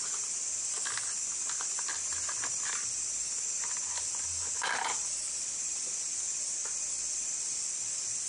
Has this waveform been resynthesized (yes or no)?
no